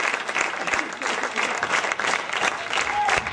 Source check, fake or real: fake